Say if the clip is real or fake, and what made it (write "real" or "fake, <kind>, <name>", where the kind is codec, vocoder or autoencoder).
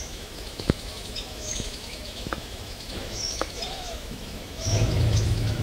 fake, autoencoder, DAC-VAE